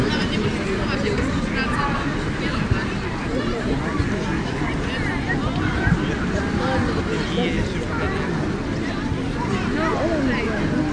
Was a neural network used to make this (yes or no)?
no